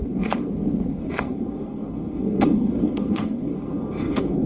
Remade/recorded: remade